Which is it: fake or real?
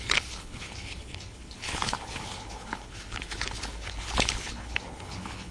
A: fake